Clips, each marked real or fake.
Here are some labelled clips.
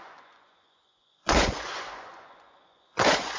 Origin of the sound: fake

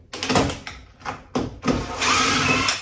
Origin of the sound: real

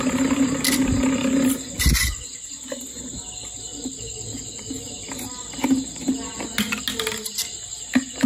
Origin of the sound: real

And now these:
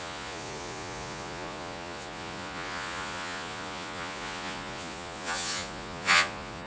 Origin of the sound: fake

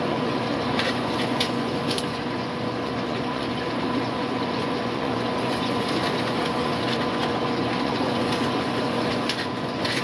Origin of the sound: fake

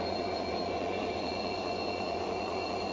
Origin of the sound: fake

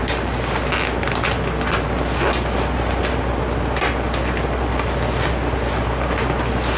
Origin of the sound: real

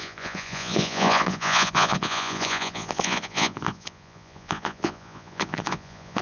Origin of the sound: fake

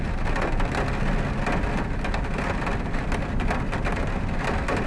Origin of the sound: real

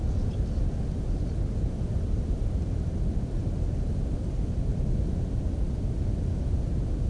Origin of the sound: real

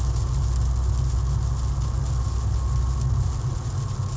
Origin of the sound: real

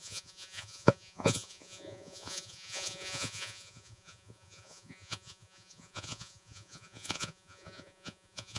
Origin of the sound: fake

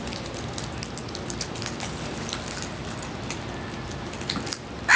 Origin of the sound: real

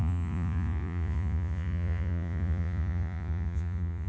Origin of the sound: fake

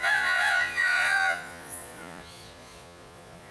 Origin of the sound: fake